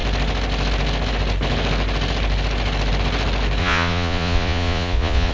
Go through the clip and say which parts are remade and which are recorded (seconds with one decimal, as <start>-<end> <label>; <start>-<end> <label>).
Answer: 0.0-3.6 recorded; 3.6-5.3 remade